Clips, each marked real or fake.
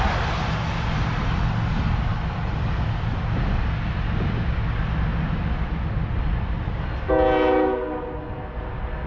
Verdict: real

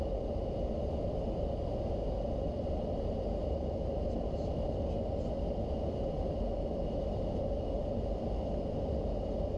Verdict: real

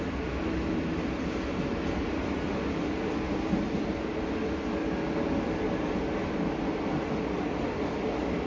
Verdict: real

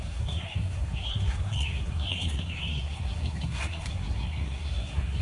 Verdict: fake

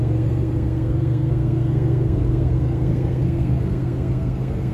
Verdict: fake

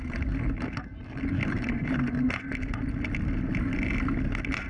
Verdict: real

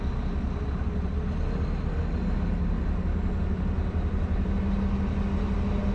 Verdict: real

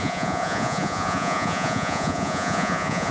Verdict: fake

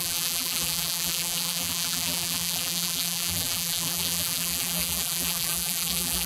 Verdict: fake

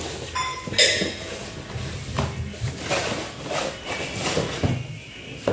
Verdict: real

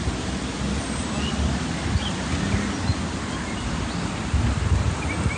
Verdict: real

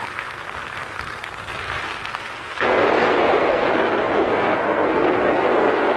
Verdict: fake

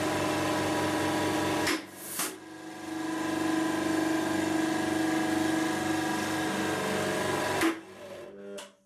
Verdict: real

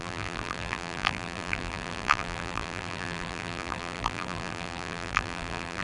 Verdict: fake